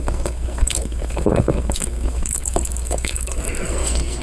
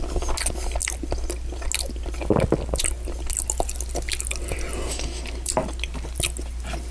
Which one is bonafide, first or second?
second